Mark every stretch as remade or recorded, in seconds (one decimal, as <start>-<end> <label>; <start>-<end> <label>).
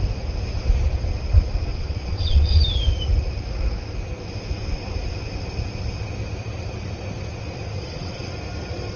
0.0-1.7 recorded; 1.7-2.6 remade; 2.6-7.8 recorded; 7.8-8.3 remade; 8.3-9.0 recorded